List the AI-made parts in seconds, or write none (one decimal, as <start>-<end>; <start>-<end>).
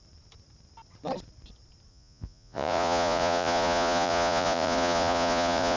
1.9-5.8